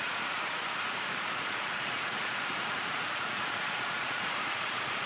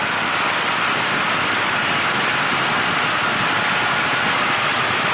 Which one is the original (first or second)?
second